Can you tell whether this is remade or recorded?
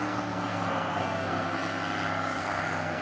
remade